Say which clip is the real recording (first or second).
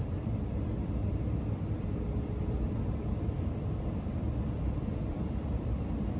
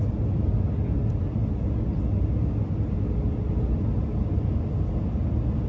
second